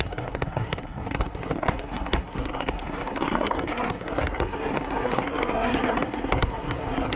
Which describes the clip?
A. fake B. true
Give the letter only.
A